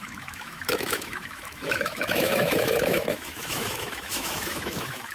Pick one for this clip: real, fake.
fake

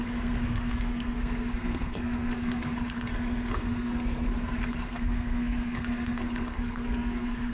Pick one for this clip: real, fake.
fake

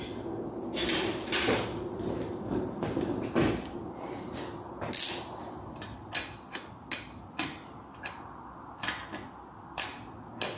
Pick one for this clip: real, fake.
real